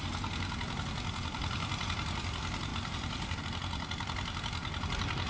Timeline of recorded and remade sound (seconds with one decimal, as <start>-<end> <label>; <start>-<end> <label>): 0.0-2.7 recorded; 2.7-3.4 remade; 3.4-4.6 recorded; 4.6-5.3 remade